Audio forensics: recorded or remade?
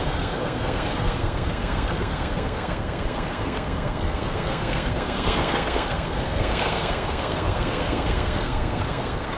remade